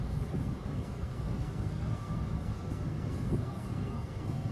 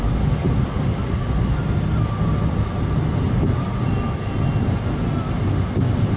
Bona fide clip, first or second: second